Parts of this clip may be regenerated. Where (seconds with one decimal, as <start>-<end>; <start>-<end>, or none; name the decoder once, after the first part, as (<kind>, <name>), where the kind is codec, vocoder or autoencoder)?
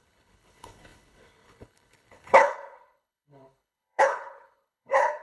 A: 0.0-5.2 (codec, HILCodec)